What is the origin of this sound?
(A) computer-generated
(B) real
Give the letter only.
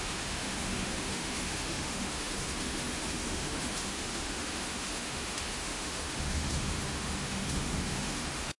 A